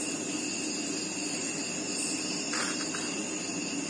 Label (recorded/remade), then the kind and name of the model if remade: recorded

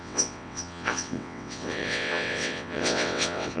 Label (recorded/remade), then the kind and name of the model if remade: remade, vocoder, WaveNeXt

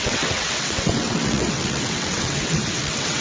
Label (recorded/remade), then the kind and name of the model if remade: remade, vocoder, WaveNeXt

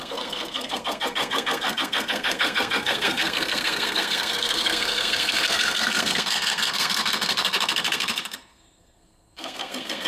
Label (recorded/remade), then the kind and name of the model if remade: remade, codec, SNAC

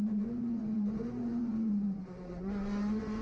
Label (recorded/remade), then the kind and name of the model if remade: remade, vocoder, Vocos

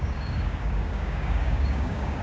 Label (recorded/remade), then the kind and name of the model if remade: remade, codec, DAC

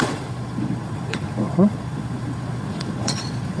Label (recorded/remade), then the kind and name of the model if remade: remade, vocoder, Vocos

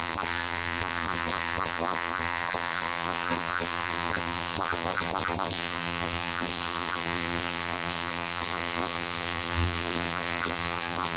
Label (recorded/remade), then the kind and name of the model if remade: remade, vocoder, BigVGAN v2